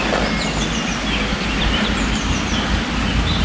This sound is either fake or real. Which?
real